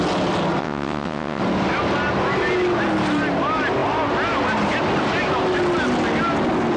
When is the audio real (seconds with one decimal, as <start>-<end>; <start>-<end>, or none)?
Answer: 0.0-0.6; 1.4-6.8